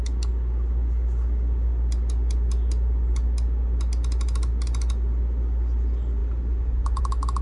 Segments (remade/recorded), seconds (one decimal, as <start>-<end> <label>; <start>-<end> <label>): 0.0-7.4 recorded

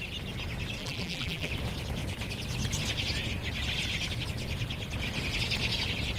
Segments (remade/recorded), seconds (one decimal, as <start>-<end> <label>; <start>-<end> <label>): 0.0-0.8 recorded; 0.8-1.5 remade; 1.5-6.2 recorded

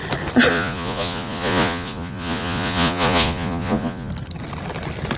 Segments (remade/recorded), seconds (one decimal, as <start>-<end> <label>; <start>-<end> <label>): 0.0-0.5 recorded; 0.5-4.1 remade; 4.1-5.2 recorded